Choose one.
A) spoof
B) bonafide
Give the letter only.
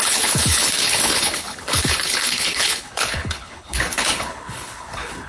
A